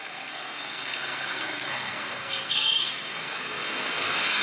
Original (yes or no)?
no